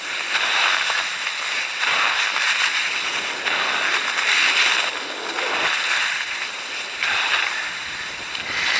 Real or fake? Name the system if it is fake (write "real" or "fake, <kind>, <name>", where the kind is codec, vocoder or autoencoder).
real